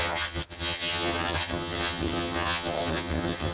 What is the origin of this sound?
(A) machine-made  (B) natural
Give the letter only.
A